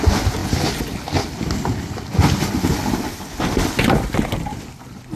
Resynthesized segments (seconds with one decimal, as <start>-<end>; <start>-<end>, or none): none

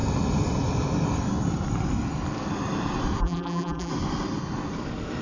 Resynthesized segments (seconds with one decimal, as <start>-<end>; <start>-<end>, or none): 3.2-3.9

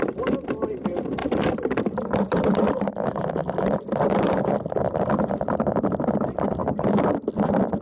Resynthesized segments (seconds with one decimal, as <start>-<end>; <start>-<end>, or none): 1.2-3.3; 6.6-7.1

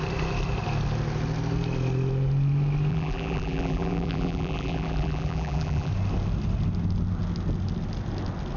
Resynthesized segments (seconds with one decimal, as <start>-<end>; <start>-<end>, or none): 2.9-5.9

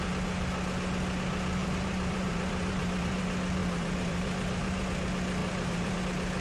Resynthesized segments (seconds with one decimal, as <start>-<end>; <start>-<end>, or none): 1.6-3.2; 3.6-4.9; 5.4-6.0

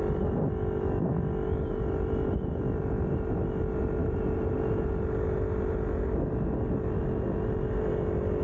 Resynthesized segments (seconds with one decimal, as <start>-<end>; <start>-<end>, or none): none